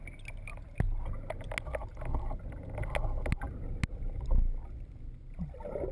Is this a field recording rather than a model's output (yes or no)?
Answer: yes